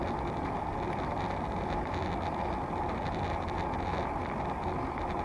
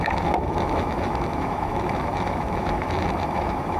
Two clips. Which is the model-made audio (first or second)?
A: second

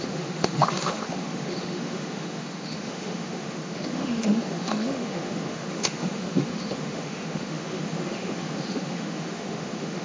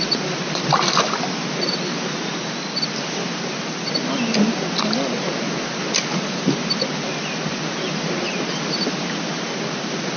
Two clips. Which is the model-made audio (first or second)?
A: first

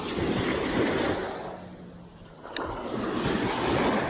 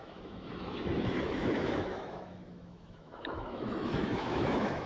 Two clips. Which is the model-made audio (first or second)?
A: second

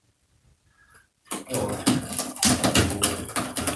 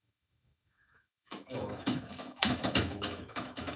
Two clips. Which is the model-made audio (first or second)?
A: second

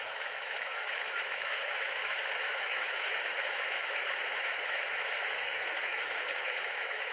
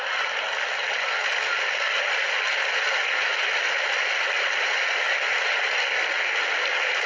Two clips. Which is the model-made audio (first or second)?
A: first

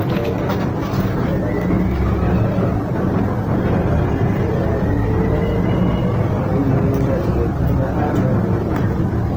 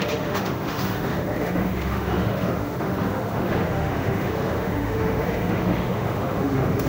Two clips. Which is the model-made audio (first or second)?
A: second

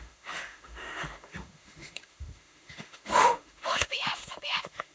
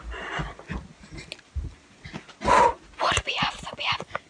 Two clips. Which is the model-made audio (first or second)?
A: first